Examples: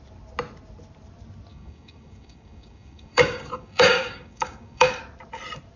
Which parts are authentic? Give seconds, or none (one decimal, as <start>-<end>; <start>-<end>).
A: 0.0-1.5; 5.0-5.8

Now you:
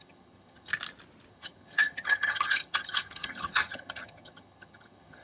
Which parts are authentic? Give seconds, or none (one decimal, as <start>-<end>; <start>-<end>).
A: 0.7-1.3

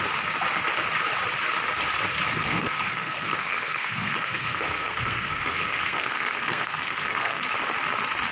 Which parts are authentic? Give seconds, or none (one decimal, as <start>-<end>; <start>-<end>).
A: 0.0-2.4; 7.4-8.3